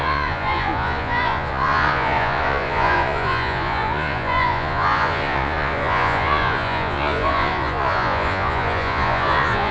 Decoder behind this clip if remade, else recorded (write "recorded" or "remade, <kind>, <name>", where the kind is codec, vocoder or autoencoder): remade, vocoder, Vocos